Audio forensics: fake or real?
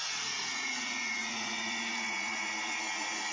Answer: fake